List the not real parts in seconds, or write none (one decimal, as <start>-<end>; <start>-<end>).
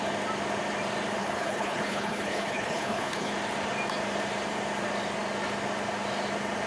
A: 1.2-3.3